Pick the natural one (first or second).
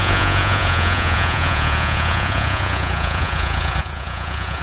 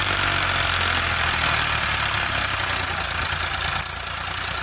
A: second